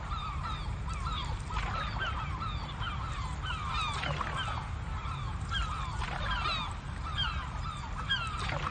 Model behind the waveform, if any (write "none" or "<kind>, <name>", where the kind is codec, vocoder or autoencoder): none